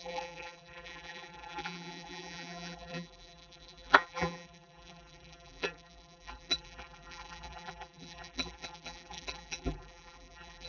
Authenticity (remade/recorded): remade